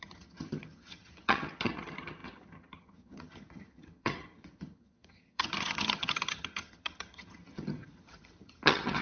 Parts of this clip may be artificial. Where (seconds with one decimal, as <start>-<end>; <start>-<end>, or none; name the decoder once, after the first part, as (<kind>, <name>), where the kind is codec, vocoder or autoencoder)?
0.0-9.0 (vocoder, HiFi-GAN)